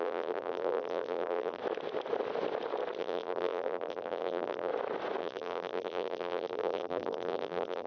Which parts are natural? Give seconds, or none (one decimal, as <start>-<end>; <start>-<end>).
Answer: 1.6-3.0; 4.7-5.2